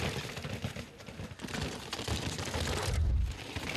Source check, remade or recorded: recorded